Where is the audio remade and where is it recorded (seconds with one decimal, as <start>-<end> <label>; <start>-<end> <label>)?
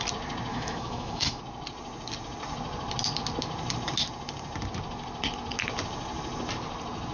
0.0-0.5 recorded; 0.5-1.4 remade; 1.4-7.1 recorded